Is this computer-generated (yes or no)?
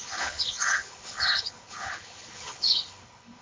yes